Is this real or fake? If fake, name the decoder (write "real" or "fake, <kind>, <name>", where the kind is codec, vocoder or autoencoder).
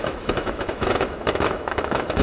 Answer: fake, autoencoder, DAC-VAE